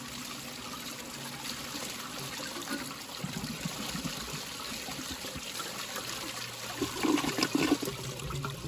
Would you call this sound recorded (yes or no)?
yes